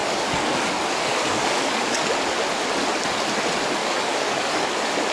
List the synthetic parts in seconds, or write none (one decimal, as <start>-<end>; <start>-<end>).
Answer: 0.0-2.1; 3.8-5.1